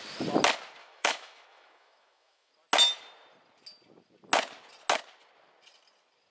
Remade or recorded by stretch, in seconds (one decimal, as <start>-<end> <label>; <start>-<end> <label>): 0.0-0.8 recorded; 0.8-2.5 remade; 2.5-6.3 recorded